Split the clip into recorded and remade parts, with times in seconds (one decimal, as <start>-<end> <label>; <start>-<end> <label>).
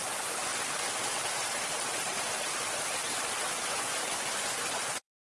0.0-0.5 remade; 0.5-3.6 recorded; 3.6-5.3 remade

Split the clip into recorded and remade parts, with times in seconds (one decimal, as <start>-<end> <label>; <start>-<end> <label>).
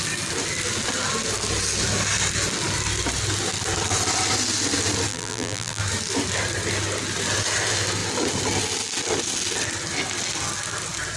0.0-5.1 recorded; 5.1-5.8 remade; 5.8-11.2 recorded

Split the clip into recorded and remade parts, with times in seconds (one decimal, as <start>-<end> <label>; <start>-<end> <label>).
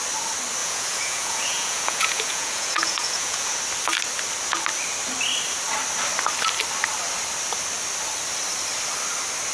0.0-0.6 recorded; 0.6-3.6 remade; 3.6-9.5 recorded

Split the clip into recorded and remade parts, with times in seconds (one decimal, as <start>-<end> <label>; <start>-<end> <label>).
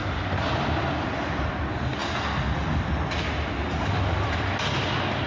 0.0-5.3 recorded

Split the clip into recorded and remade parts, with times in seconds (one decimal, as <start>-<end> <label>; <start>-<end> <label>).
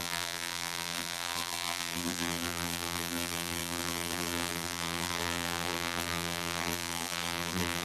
0.0-7.8 remade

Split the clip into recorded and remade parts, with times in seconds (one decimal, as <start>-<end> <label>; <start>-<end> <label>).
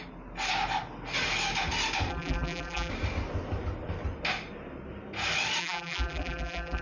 0.0-2.1 recorded; 2.1-2.9 remade; 2.9-5.6 recorded; 5.6-6.8 remade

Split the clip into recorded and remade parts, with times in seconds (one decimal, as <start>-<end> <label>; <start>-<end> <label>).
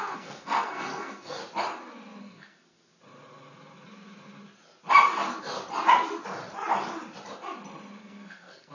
0.0-1.4 remade; 1.4-2.2 recorded; 2.2-2.9 remade; 2.9-8.0 recorded; 8.0-8.7 remade